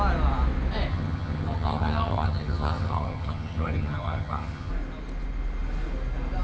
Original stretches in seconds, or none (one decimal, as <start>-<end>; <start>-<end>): 0.0-0.9; 4.7-6.4

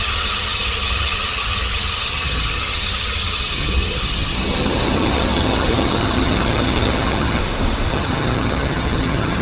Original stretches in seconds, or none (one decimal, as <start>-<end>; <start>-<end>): 7.4-7.9

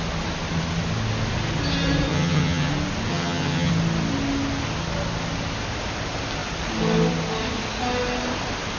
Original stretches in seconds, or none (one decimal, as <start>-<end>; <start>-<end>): 0.0-2.1; 2.7-3.1; 3.7-8.8

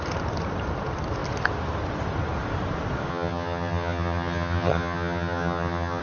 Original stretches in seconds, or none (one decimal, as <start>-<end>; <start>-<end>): 0.0-3.1